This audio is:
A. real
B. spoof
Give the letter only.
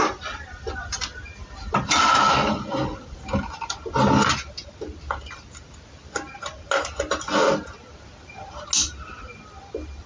A